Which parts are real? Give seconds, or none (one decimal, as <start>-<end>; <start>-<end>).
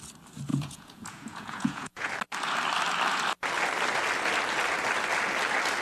0.0-0.5; 2.1-5.8